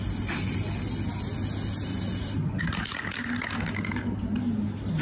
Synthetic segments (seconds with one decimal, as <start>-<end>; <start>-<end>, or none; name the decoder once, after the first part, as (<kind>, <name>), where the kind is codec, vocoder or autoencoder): none